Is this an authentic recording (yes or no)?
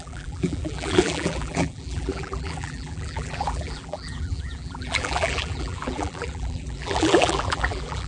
no